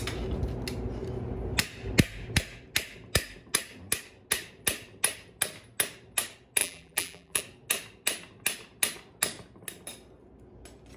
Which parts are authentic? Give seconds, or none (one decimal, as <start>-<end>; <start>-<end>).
0.0-6.6; 7.4-11.0